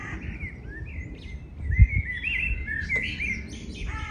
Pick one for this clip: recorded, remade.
recorded